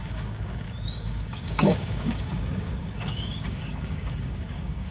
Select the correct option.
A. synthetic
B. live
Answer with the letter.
A